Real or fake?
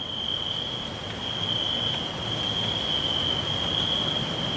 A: real